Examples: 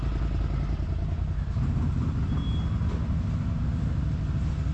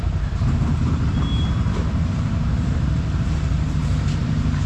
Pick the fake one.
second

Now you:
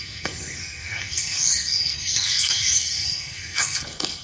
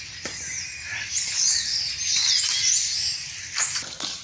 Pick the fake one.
first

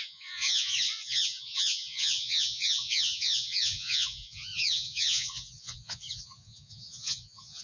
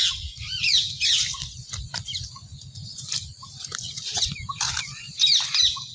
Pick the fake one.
first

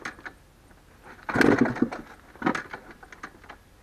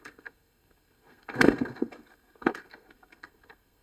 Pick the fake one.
second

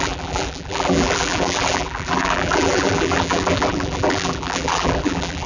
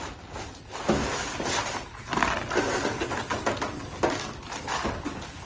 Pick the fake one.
first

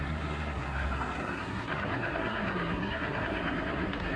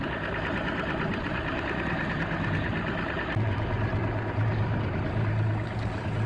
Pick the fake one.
first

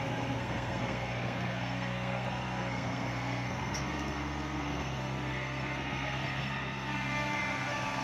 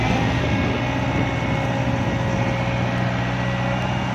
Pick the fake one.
first